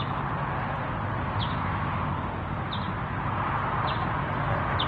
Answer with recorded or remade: recorded